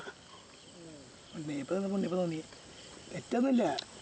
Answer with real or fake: real